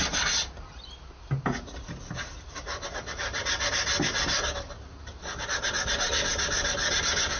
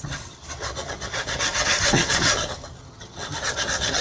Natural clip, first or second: first